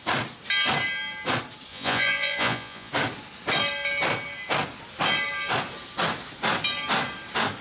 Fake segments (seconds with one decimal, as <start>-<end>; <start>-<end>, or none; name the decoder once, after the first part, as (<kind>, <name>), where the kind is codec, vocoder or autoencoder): 1.7-2.9 (vocoder, Vocos)